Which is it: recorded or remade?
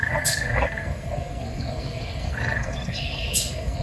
remade